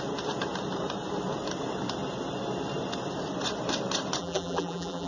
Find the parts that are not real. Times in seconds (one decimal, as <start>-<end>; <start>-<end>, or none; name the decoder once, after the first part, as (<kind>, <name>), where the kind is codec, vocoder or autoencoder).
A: 4.2-5.1 (vocoder, BigVGAN v2)